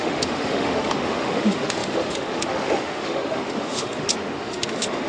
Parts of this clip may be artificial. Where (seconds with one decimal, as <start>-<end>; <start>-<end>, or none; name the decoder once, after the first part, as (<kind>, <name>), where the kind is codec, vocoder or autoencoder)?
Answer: 0.0-5.1 (autoencoder, DAC-VAE)